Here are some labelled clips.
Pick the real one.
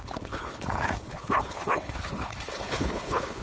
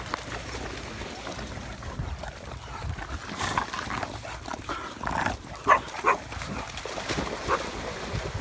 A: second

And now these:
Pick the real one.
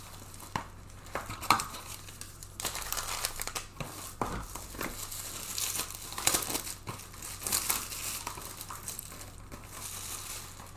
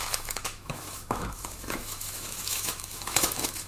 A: first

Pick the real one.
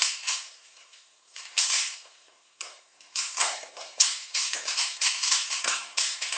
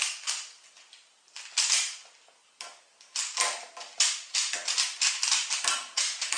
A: second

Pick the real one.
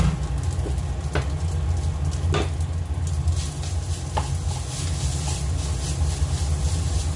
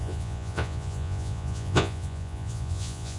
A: first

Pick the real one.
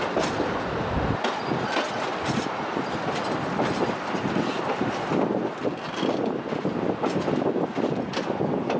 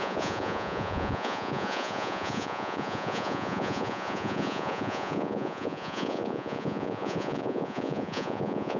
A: first